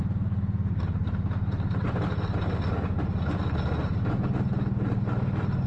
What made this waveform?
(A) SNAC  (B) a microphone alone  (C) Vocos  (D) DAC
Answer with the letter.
B